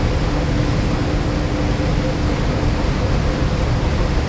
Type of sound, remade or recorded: recorded